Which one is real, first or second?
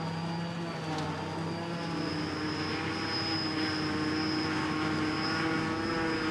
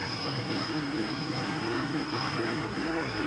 first